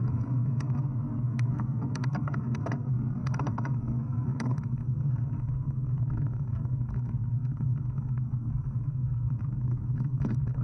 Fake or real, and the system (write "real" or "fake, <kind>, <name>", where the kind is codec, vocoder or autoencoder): fake, codec, SNAC